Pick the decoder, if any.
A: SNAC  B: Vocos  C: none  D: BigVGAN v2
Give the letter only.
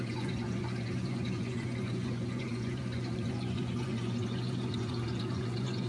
B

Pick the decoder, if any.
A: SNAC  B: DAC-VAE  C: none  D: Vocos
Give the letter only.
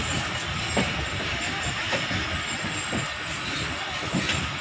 C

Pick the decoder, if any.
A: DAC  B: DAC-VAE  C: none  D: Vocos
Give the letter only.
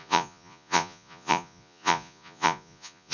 D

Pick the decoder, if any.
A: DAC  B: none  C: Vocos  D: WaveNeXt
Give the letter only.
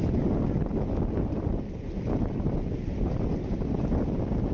B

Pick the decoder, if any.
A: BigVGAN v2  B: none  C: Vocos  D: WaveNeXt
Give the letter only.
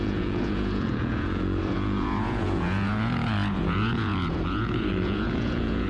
C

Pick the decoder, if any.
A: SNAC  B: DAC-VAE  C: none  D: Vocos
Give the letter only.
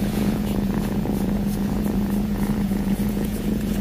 D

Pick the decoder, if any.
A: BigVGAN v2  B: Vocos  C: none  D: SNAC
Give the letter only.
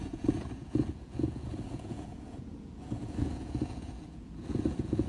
B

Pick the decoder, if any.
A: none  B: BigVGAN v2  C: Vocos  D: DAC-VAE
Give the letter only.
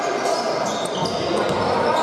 A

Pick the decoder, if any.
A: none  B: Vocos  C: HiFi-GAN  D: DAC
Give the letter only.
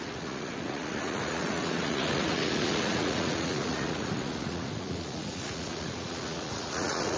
B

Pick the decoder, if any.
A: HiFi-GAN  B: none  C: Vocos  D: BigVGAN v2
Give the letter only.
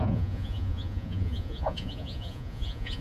C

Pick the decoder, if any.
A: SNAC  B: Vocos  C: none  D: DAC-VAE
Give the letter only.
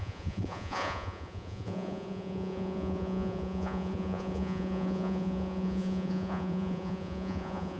B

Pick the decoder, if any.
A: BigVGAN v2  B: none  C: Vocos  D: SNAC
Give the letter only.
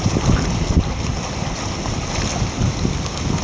B